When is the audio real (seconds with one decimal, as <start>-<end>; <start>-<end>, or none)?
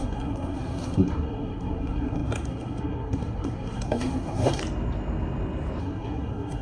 4.6-5.8